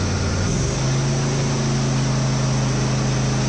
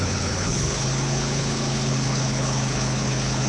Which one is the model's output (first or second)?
second